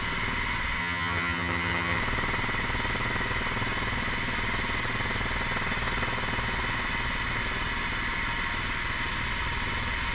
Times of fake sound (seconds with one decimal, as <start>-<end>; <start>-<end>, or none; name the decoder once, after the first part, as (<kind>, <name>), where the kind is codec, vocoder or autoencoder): 0.8-2.0 (vocoder, HiFi-GAN)

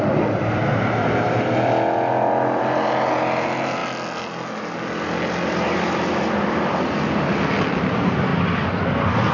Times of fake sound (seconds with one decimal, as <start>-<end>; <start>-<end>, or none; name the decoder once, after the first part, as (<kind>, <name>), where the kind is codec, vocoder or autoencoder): none

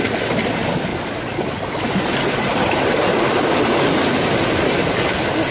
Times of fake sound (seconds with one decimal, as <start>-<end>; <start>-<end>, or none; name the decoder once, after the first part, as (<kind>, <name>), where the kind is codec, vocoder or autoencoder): none